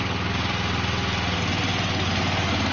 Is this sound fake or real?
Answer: real